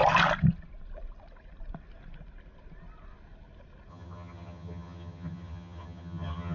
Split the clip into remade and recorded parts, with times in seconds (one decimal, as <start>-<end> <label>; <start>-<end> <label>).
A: 0.0-3.9 recorded; 3.9-6.5 remade